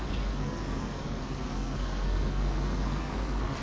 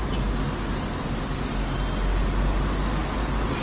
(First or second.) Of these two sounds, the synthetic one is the first